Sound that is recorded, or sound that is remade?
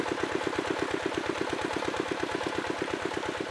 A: recorded